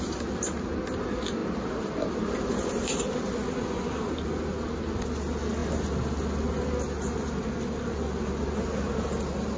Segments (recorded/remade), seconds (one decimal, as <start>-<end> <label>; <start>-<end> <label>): 0.0-9.6 recorded